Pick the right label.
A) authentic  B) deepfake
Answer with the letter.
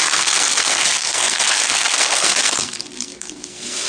B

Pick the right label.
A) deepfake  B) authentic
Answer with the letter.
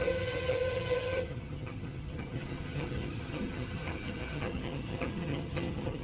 A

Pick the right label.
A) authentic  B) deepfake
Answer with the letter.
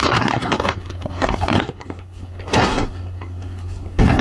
B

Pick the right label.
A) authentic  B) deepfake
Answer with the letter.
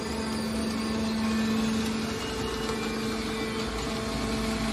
A